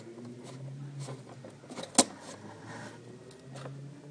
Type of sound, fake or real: real